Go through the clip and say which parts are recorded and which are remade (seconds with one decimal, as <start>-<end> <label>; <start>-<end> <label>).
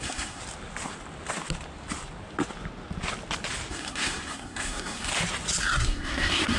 0.0-0.4 remade; 0.4-3.7 recorded; 3.7-5.1 remade; 5.1-5.6 recorded; 5.6-6.6 remade